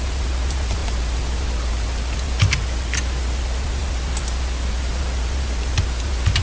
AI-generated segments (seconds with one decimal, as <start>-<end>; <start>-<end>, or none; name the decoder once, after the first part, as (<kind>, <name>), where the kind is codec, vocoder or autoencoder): none